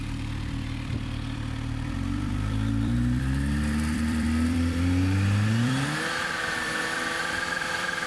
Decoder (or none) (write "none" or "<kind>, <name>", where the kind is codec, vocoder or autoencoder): vocoder, BigVGAN v2